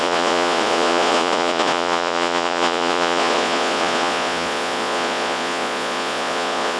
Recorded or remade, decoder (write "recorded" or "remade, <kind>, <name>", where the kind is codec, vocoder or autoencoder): remade, vocoder, Vocos